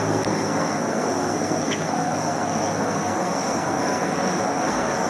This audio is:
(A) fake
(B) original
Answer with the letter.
A